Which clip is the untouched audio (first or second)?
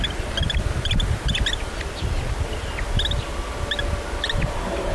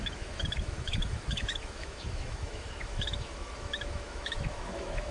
first